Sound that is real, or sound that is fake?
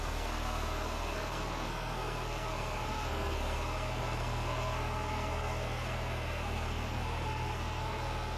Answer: fake